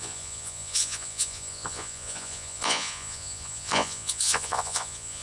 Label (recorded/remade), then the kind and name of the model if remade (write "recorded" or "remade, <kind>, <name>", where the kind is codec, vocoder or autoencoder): remade, vocoder, Vocos